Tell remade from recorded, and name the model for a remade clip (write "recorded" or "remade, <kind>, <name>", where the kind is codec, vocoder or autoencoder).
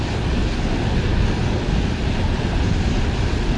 recorded